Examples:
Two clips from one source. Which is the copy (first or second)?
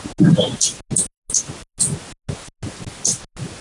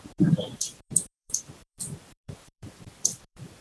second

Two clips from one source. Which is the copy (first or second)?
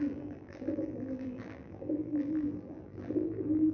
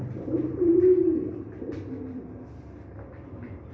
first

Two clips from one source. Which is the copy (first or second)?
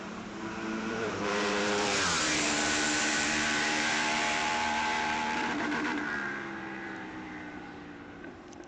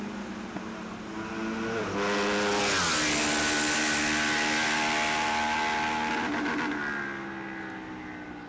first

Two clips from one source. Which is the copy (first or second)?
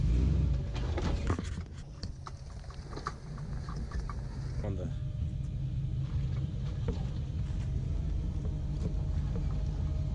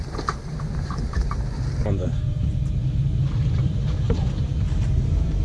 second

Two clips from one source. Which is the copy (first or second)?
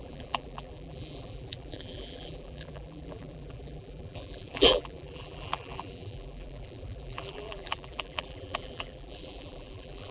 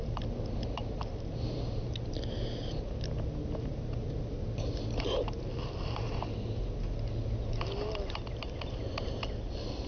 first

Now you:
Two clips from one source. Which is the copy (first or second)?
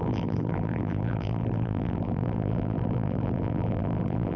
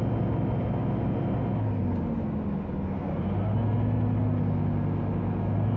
first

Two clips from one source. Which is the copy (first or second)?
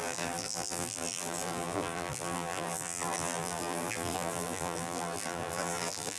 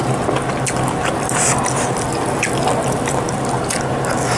first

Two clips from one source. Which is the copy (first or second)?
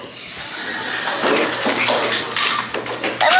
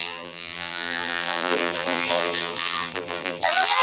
second